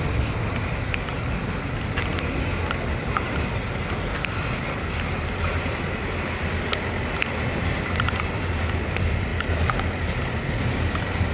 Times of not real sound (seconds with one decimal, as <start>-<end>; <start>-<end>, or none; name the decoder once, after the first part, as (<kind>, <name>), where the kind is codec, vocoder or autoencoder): none